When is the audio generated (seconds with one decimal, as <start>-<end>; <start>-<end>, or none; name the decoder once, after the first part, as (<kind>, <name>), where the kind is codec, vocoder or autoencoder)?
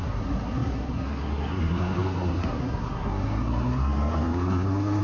0.0-5.0 (codec, SNAC)